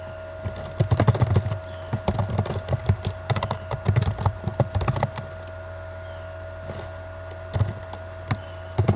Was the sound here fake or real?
real